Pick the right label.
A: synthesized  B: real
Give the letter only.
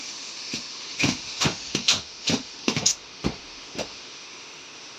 A